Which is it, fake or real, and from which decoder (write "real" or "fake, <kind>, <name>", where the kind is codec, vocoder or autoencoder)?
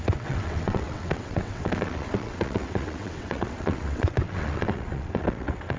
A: fake, vocoder, WaveNeXt